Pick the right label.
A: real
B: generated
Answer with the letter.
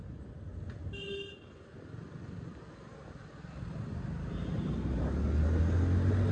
A